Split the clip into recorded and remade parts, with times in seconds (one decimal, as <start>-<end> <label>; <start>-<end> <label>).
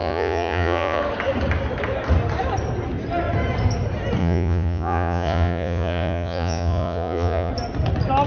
0.0-1.0 remade; 1.0-4.2 recorded; 4.2-7.5 remade; 7.5-8.3 recorded